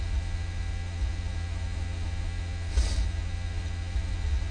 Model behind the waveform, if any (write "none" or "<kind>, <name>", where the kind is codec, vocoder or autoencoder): vocoder, Vocos